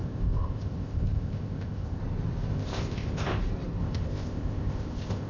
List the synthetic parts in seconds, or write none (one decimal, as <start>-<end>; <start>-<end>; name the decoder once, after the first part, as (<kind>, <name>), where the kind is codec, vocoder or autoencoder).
0.0-2.0 (codec, ZipCodec); 2.5-3.4; 3.8-5.3